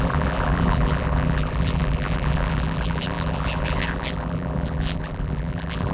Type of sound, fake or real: fake